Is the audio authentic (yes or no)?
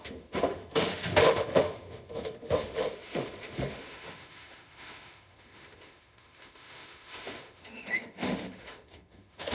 no